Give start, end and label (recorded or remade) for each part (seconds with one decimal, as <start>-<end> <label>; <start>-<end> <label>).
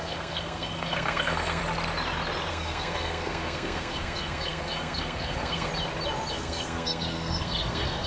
0.0-1.6 remade; 1.6-2.5 recorded; 2.5-5.7 remade; 5.7-6.3 recorded; 6.3-8.1 remade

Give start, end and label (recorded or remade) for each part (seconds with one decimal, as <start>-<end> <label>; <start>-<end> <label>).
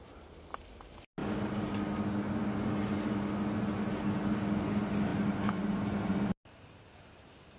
0.0-7.6 recorded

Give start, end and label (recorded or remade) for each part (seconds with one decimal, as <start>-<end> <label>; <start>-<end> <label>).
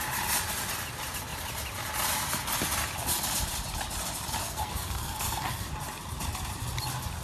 0.0-4.4 recorded; 4.4-5.7 remade; 5.7-7.2 recorded